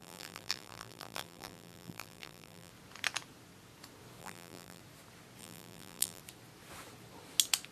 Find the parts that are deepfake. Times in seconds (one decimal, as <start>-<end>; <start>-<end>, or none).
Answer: 0.0-2.7; 4.2-4.8; 5.4-6.2